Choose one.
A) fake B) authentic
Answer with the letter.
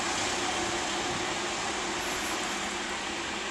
B